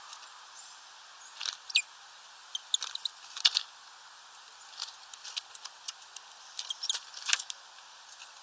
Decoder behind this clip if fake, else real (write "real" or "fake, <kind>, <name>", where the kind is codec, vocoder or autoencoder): real